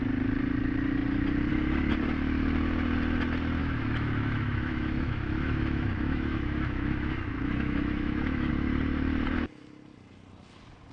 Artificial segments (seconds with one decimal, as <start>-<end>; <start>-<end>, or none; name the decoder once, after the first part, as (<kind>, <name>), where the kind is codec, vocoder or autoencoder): 3.6-8.5 (autoencoder, DAC-VAE)

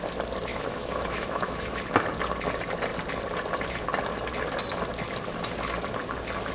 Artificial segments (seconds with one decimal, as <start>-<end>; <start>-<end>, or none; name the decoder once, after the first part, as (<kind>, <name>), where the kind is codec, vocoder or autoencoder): 0.5-1.8 (autoencoder, DAC-VAE)

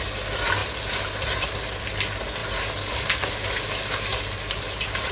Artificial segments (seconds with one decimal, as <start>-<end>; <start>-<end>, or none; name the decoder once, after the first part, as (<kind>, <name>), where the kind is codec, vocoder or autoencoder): 0.6-1.8 (vocoder, BigVGAN v2); 2.4-3.3; 4.1-5.1

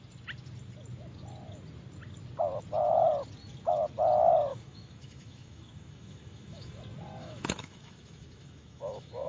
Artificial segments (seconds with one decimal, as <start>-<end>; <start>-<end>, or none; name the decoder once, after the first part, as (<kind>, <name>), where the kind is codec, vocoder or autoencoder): 4.5-6.8 (autoencoder, DAC-VAE); 7.2-9.3

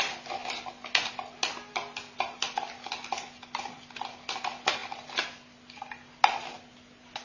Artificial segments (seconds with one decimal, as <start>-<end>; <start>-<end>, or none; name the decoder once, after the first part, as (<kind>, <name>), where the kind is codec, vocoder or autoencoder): none